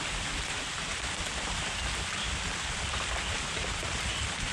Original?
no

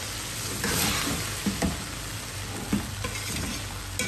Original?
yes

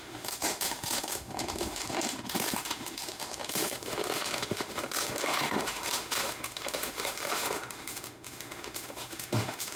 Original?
no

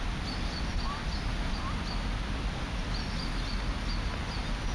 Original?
yes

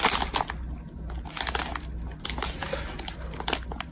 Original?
yes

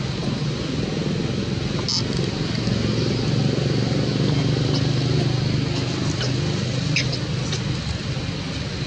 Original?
yes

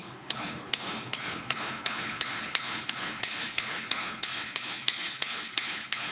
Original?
no